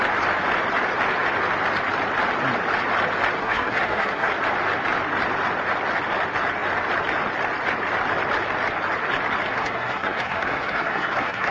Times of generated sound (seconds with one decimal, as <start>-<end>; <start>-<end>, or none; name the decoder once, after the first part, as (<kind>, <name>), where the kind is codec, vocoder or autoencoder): 3.4-4.3 (codec, SNAC); 9.5-11.5